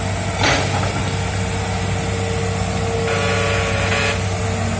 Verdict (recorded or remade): recorded